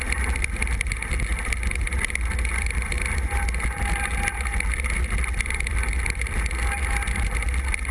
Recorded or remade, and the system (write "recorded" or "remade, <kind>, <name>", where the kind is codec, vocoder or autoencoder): recorded